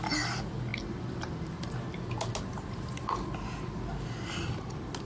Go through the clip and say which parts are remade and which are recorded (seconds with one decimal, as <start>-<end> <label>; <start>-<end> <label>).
0.0-5.0 recorded